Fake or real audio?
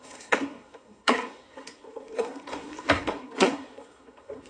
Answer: fake